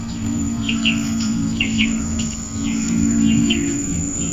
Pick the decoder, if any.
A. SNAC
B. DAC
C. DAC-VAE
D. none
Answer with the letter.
A